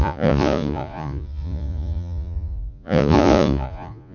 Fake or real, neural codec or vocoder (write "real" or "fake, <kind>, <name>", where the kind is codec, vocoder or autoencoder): fake, vocoder, Vocos